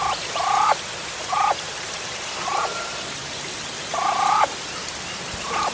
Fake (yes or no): no